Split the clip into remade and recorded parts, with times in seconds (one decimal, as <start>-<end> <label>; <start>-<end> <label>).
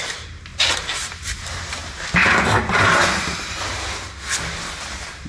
0.0-5.3 recorded